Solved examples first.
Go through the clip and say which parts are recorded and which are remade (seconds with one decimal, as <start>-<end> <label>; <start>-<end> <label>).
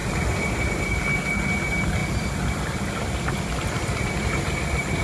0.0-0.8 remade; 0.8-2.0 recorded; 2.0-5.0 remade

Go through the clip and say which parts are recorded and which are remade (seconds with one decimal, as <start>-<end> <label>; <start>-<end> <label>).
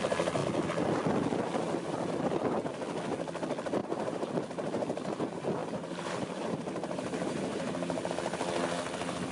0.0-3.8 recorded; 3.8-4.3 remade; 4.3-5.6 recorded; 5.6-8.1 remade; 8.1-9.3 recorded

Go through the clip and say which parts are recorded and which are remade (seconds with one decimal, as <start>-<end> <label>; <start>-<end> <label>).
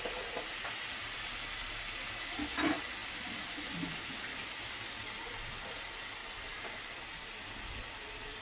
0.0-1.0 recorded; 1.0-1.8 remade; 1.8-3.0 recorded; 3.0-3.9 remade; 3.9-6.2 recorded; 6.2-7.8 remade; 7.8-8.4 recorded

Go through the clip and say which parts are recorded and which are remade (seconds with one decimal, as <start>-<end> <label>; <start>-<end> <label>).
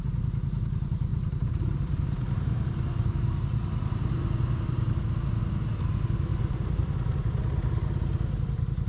0.0-1.1 recorded; 1.1-5.2 remade; 5.2-6.3 recorded; 6.3-6.9 remade; 6.9-8.9 recorded